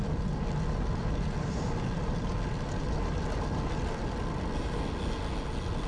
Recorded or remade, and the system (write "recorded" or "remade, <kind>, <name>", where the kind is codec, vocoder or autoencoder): recorded